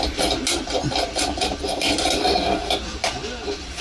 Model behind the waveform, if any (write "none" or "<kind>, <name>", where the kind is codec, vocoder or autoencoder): none